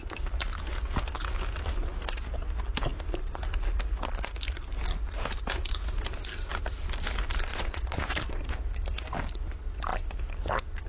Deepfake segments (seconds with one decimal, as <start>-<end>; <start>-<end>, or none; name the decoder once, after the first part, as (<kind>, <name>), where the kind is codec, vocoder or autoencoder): 7.5-8.1 (vocoder, Vocos)